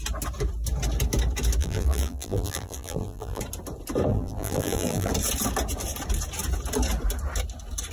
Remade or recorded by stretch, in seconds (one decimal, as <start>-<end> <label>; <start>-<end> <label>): 0.0-1.6 recorded; 1.6-3.4 remade; 3.4-4.1 recorded; 4.1-5.1 remade; 5.1-7.9 recorded